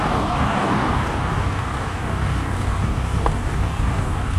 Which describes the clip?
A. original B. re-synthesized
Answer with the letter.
B